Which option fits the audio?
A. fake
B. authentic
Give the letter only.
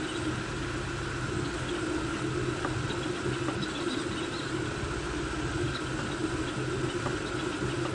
B